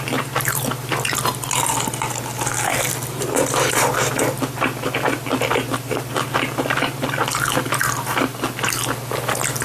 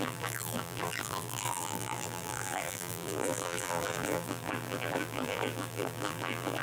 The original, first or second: first